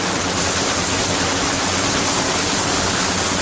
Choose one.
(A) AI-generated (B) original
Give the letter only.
B